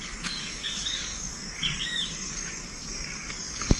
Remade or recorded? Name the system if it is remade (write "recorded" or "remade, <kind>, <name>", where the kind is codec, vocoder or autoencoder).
remade, codec, DAC